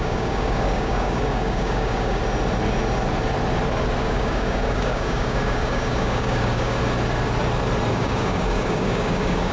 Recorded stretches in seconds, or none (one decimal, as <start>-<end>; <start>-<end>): 2.2-4.0; 6.8-7.9